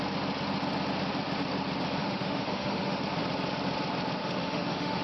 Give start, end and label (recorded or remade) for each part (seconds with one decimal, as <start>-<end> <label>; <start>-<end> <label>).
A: 0.0-2.0 recorded; 2.0-3.0 remade; 3.0-4.2 recorded; 4.2-5.0 remade